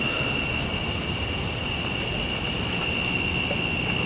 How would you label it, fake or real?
real